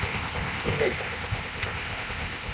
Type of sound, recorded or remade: remade